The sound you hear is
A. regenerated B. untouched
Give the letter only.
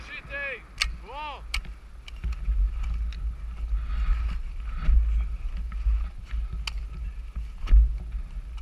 B